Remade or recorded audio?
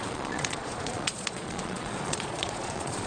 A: remade